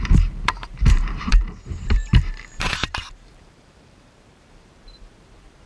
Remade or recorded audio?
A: remade